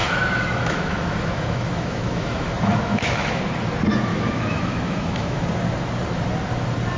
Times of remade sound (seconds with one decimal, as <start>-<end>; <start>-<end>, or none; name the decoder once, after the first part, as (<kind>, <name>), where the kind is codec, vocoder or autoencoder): 0.0-3.4 (autoencoder, DAC-VAE); 4.1-5.4